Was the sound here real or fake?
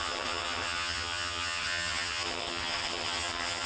fake